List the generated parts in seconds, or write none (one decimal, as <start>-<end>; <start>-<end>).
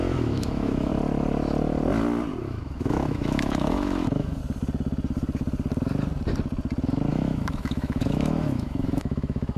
0.0-0.9; 2.4-4.4; 7.1-9.6